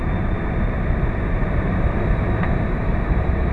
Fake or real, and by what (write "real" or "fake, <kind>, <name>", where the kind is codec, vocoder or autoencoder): fake, vocoder, BigVGAN v2